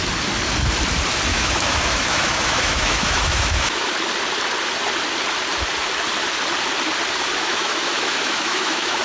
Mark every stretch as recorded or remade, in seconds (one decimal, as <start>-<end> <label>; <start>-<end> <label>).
0.0-1.3 recorded; 1.3-3.9 remade; 3.9-7.4 recorded; 7.4-9.0 remade